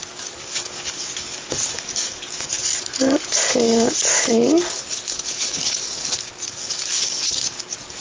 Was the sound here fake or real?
fake